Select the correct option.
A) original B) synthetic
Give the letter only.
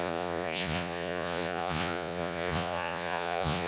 B